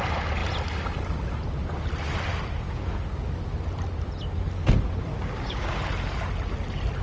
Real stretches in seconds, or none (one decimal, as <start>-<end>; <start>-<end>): 0.0-5.1; 5.8-7.0